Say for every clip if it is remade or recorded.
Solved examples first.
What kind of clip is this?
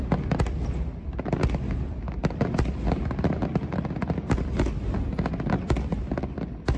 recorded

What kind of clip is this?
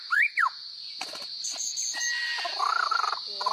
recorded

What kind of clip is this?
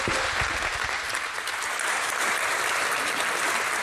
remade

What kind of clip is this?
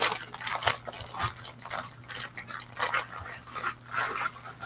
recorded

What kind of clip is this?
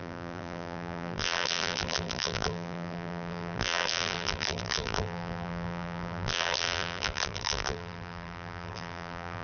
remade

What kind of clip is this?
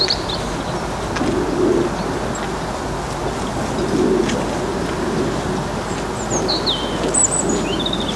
recorded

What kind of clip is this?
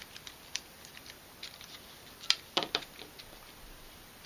remade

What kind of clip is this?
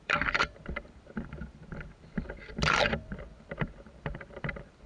remade